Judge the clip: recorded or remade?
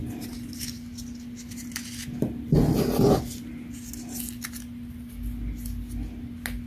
recorded